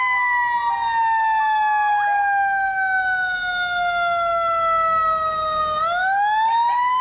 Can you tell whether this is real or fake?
real